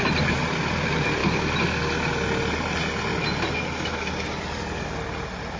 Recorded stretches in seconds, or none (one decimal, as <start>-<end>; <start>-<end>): 0.0-5.6